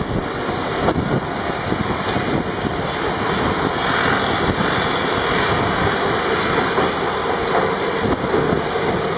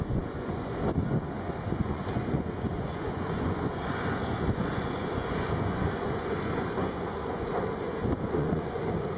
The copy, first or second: second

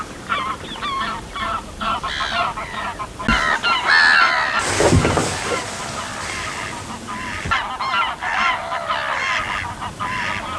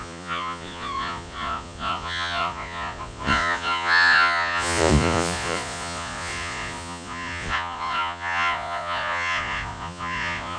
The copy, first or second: second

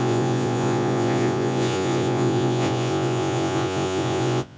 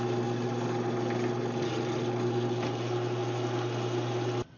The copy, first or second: first